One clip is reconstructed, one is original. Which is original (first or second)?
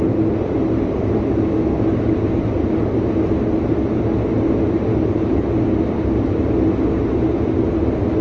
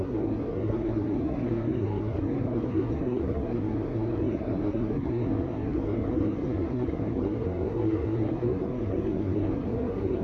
first